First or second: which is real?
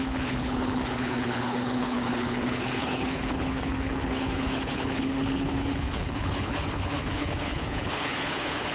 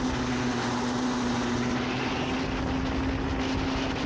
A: second